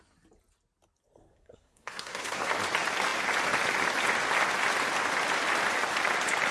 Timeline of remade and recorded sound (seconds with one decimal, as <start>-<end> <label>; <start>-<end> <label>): 0.0-1.2 recorded; 1.2-2.5 remade; 2.5-6.5 recorded